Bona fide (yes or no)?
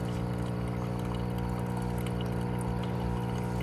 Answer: yes